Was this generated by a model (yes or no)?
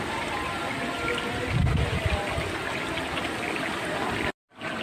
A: no